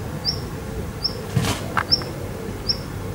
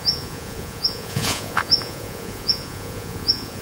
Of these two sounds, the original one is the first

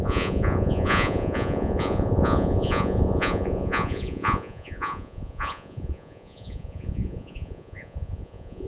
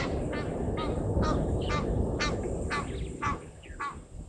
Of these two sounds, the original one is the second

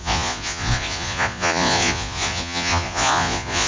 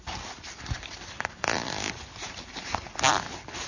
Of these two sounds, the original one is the second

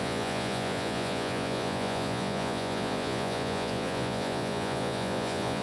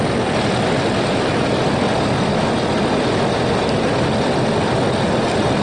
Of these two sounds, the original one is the second